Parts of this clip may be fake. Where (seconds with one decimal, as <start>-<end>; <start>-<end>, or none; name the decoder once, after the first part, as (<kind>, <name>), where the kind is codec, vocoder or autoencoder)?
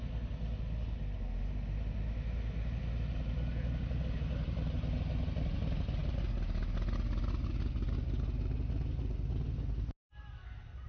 none